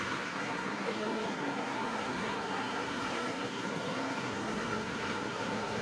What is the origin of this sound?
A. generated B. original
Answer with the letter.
A